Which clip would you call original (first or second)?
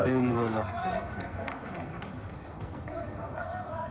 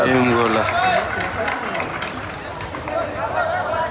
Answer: second